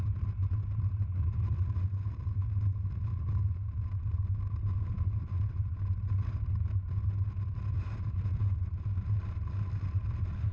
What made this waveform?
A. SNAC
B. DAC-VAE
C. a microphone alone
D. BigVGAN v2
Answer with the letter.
C